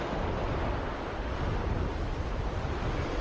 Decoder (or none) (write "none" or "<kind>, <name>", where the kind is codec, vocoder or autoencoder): none